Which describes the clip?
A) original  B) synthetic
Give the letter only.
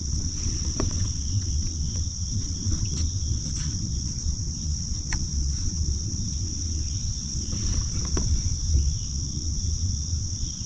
B